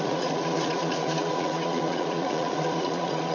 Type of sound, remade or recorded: remade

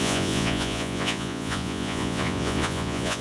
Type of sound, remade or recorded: remade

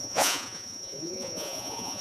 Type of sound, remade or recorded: remade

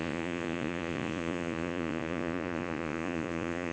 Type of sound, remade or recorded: remade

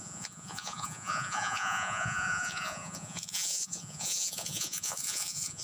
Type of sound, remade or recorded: remade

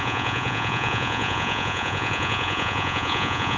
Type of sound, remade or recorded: remade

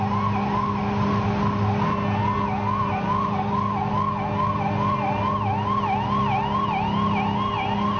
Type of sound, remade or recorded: recorded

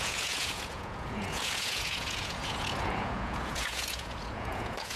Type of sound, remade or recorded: remade